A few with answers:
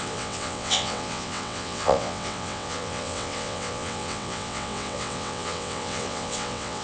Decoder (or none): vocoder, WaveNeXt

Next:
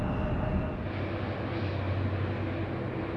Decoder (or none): none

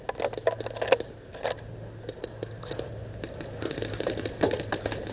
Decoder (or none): none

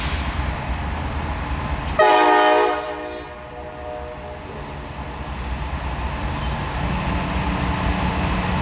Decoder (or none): none